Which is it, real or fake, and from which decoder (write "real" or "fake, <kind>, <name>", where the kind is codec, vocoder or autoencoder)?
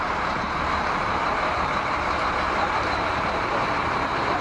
fake, vocoder, BigVGAN v2